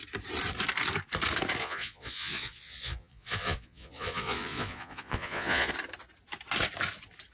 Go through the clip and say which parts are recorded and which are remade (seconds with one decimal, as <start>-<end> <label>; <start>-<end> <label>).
0.0-1.6 recorded; 1.6-5.7 remade; 5.7-7.3 recorded